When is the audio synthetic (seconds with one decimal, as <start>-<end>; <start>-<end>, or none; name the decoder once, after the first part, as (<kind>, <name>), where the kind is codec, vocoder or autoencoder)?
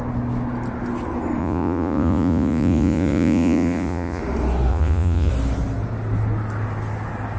1.4-4.2 (vocoder, Vocos); 4.7-5.3